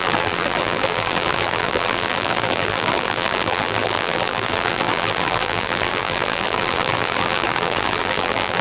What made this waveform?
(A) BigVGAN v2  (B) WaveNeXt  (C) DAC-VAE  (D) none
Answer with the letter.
A